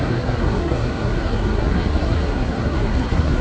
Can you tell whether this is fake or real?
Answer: fake